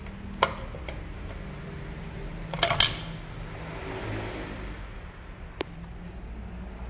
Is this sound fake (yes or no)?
no